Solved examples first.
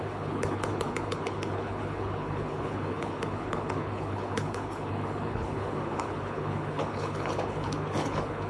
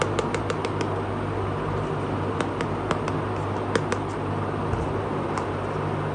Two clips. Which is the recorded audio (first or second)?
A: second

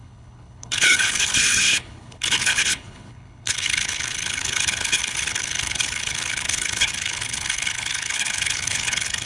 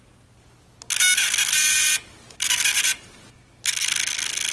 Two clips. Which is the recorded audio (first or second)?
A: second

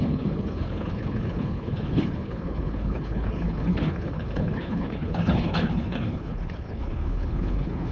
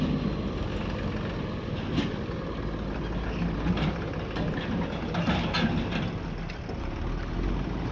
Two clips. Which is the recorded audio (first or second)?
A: second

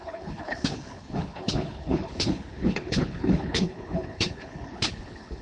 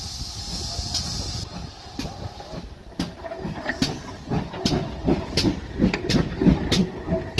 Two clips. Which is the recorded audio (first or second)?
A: second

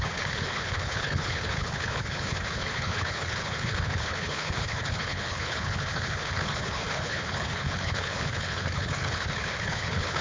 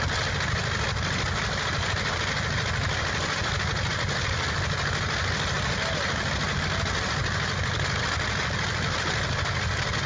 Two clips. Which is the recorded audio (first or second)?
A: second